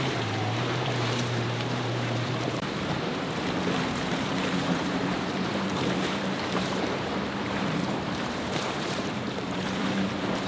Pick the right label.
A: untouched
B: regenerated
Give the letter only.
B